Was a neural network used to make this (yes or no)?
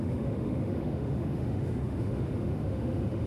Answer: yes